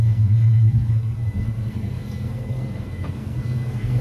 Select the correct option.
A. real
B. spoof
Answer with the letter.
B